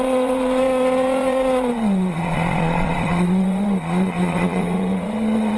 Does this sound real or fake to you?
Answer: fake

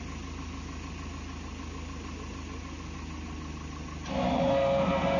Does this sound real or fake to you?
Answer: real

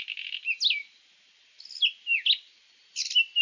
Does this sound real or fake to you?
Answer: real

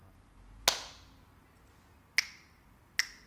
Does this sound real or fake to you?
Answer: real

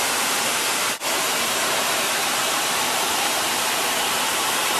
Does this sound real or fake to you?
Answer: fake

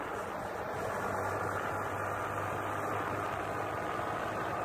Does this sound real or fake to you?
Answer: real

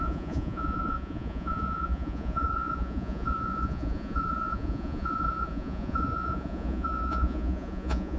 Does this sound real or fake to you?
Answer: fake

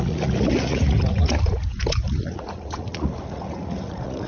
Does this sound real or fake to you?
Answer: fake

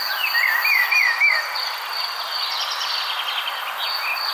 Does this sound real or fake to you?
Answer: real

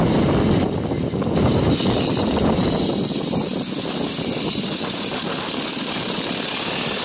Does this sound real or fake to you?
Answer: real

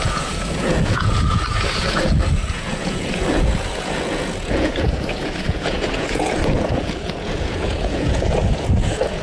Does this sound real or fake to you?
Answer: fake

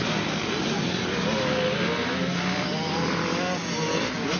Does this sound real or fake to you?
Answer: real